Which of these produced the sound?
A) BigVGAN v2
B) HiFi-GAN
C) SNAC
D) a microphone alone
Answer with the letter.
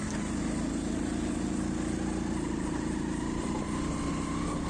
D